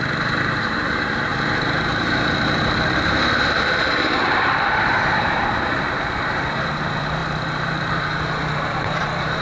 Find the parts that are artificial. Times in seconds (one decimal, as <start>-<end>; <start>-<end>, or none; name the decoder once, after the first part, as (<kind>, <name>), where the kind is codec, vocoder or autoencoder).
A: 0.0-9.4 (vocoder, BigVGAN v2)